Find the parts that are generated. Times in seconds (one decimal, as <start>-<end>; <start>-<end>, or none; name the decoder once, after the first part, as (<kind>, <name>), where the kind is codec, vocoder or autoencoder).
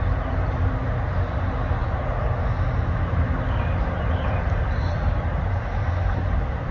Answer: none